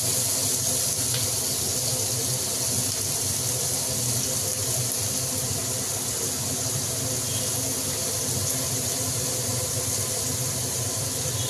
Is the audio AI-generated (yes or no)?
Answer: no